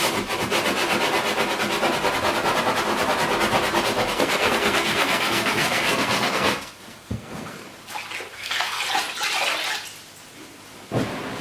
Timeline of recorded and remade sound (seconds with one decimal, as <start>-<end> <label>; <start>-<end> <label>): 0.0-4.1 recorded; 4.1-7.7 remade; 7.7-8.3 recorded; 8.3-8.8 remade; 8.8-11.4 recorded